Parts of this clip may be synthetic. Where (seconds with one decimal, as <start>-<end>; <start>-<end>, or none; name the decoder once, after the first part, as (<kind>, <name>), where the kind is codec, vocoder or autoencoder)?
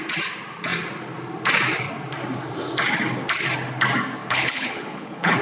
4.2-5.4 (codec, HILCodec)